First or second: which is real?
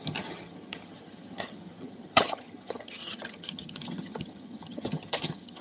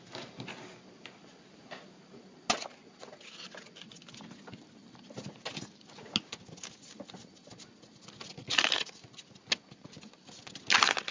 second